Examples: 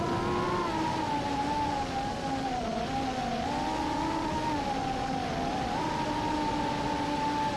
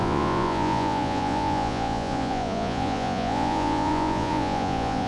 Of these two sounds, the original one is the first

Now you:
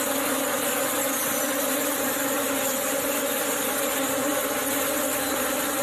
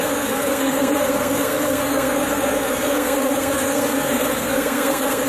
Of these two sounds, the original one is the first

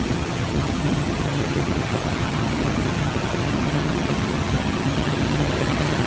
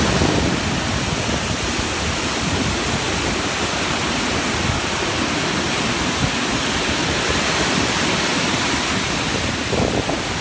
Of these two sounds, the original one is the second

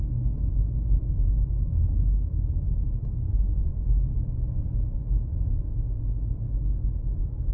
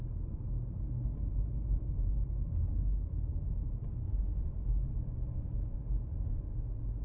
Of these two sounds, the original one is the second